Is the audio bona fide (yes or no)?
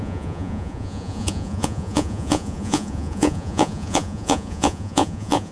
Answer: no